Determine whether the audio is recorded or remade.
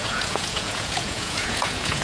remade